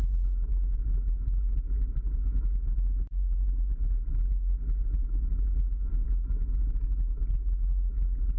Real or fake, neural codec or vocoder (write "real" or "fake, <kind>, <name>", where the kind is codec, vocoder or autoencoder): real